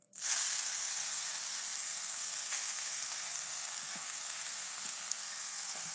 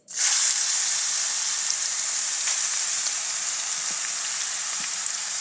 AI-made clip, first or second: first